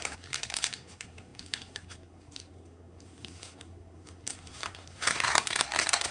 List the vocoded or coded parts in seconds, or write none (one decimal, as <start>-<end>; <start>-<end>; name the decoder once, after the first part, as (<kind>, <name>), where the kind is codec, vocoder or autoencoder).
0.0-6.1 (codec, SNAC)